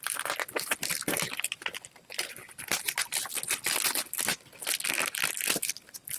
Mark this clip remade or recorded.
recorded